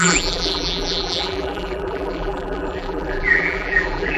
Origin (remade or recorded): remade